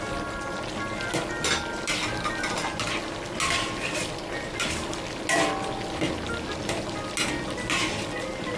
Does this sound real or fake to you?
real